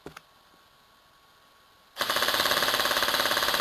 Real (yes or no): yes